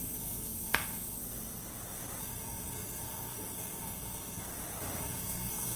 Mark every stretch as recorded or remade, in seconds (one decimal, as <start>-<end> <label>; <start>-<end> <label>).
0.0-1.2 remade; 1.2-2.2 recorded; 2.2-4.4 remade; 4.4-5.0 recorded; 5.0-5.8 remade